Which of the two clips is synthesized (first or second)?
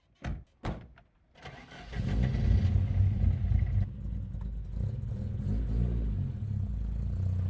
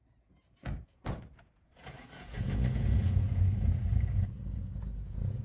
second